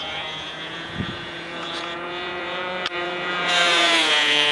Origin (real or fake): fake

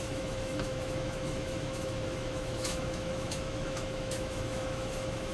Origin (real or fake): fake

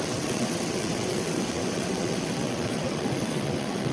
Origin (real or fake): fake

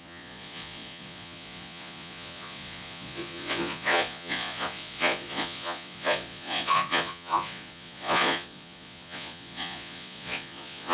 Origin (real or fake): fake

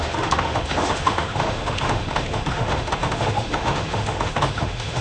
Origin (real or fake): fake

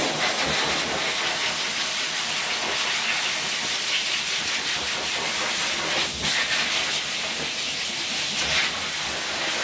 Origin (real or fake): real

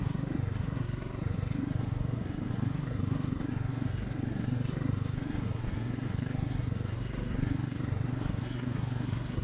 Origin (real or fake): fake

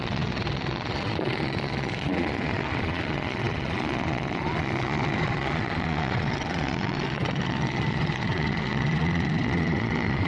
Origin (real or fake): fake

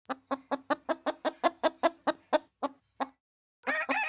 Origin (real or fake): real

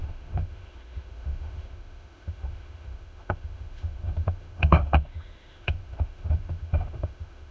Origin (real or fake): fake